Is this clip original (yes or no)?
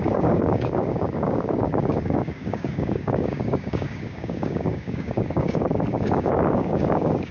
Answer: no